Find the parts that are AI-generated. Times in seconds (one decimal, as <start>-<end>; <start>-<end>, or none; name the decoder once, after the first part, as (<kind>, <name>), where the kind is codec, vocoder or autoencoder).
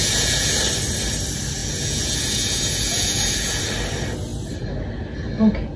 0.0-0.6 (vocoder, Vocos); 1.6-3.6